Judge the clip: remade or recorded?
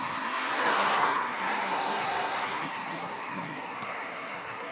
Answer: remade